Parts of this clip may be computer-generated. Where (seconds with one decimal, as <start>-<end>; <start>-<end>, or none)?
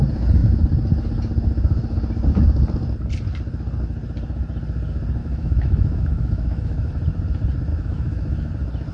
5.2-6.9; 7.7-8.5